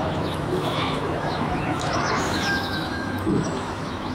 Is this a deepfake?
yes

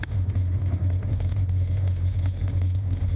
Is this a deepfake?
yes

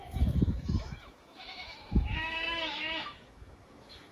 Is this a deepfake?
yes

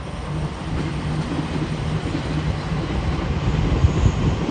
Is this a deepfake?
no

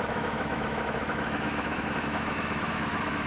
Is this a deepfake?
yes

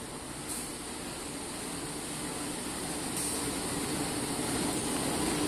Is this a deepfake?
no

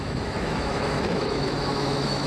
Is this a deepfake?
yes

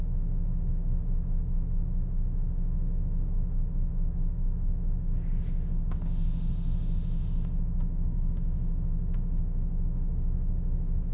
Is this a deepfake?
yes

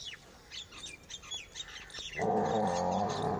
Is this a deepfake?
no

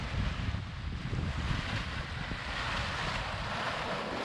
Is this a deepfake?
no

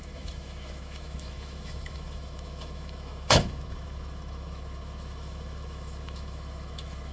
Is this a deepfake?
yes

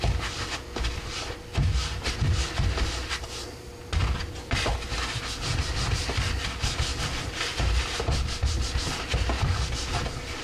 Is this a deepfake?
no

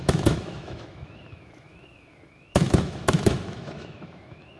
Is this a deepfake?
yes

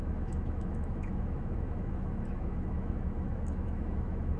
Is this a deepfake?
yes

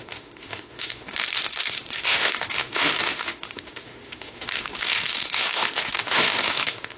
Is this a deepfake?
yes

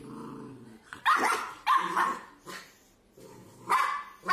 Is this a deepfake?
no